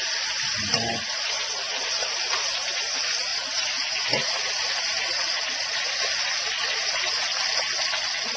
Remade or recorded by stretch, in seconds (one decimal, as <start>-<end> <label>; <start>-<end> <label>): 0.0-8.4 recorded